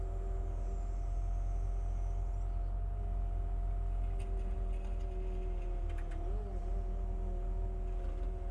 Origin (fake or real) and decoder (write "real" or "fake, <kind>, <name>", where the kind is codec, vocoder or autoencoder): real